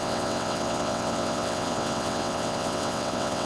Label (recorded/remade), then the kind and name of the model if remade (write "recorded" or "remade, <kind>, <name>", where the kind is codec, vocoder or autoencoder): remade, vocoder, WaveNeXt